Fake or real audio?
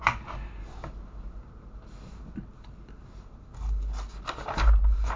real